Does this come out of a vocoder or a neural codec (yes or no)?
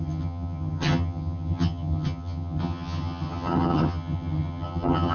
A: yes